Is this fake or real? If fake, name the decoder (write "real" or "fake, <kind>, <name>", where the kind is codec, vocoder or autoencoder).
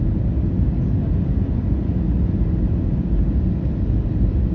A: real